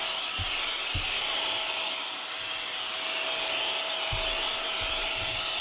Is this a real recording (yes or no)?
yes